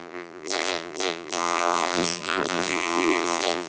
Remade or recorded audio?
remade